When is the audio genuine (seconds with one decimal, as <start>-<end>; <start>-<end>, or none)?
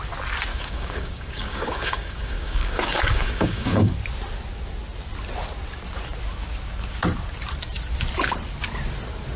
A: 0.0-0.5; 3.9-9.4